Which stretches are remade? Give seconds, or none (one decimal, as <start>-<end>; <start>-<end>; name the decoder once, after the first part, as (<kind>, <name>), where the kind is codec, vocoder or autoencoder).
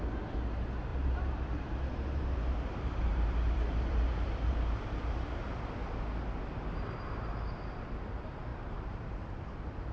0.9-5.0 (vocoder, BigVGAN v2); 8.5-9.3